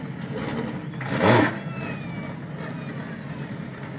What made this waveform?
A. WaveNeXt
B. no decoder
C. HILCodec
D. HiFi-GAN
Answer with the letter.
B